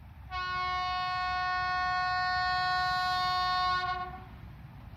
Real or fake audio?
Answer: real